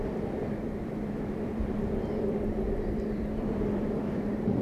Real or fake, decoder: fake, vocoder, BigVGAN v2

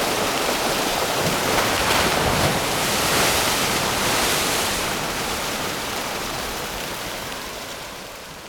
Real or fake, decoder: fake, vocoder, BigVGAN v2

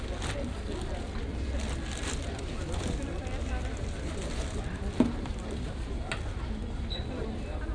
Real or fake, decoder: real